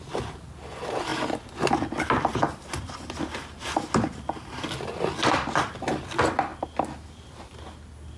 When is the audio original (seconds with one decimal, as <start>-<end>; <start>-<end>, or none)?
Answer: 0.0-8.2